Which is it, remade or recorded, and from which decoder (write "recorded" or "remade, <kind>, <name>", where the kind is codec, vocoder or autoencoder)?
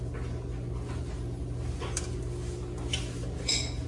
recorded